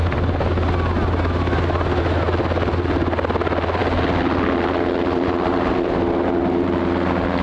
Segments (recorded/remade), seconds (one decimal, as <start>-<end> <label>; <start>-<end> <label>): 0.0-7.4 recorded